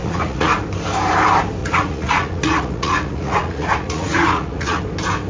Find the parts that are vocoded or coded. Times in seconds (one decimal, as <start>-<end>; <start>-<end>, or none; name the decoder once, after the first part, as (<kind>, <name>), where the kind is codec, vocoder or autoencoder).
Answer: 0.0-0.5 (vocoder, Vocos); 1.6-4.8